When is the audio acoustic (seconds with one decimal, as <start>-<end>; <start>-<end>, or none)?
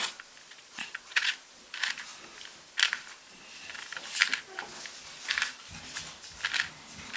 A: 0.0-0.5; 1.3-7.2